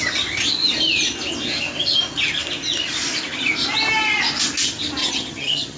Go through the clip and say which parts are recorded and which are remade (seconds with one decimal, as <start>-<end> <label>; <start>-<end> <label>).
0.0-5.0 recorded; 5.0-5.8 remade